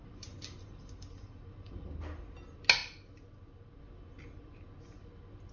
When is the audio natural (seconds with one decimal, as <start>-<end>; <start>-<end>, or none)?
1.9-5.5